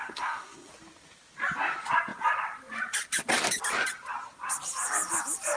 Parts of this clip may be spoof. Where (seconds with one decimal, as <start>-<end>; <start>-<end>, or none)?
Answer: 0.0-0.7